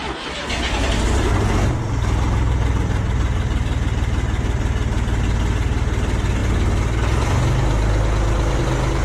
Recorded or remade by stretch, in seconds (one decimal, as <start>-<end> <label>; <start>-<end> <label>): 0.0-9.0 recorded